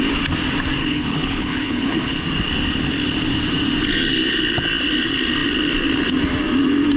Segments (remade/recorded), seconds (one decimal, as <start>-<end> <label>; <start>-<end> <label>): 0.0-0.8 recorded; 0.8-2.2 remade; 2.2-7.0 recorded